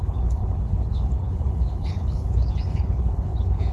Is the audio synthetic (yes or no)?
yes